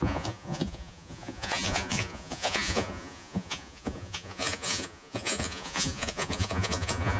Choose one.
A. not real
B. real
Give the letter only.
A